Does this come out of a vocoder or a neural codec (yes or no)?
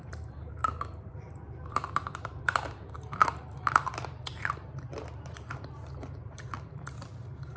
yes